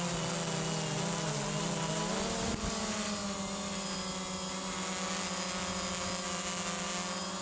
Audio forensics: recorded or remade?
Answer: recorded